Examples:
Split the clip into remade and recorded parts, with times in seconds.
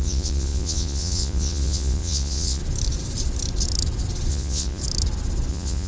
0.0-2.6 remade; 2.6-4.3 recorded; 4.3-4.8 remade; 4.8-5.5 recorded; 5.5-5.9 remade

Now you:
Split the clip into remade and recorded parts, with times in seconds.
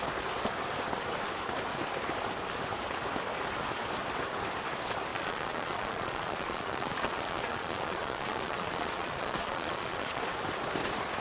0.0-5.1 recorded; 5.1-10.2 remade; 10.2-11.2 recorded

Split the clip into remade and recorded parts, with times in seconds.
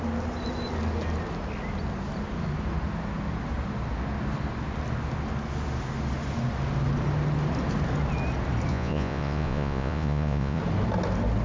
0.0-8.7 recorded; 8.7-10.6 remade; 10.6-11.4 recorded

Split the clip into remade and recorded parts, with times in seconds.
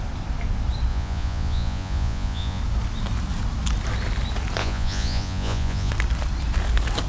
0.0-0.9 recorded; 0.9-2.6 remade; 2.6-4.6 recorded; 4.6-5.9 remade; 5.9-7.1 recorded